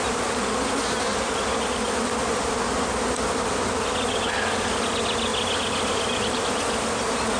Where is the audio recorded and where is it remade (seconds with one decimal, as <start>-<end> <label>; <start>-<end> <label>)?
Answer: 0.0-7.4 recorded